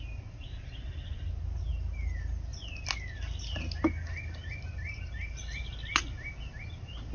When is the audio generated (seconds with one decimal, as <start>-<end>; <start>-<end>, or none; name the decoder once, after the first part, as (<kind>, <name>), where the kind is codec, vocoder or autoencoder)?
none